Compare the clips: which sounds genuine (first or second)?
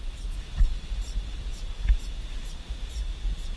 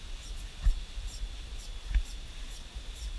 first